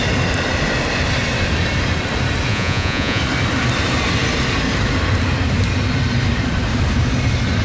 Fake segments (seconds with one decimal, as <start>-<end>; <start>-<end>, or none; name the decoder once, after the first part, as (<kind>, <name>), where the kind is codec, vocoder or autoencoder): 2.5-3.2 (vocoder, Vocos)